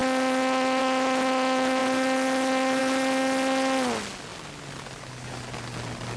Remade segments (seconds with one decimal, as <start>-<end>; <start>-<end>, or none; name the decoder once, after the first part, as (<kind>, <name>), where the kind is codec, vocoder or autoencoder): none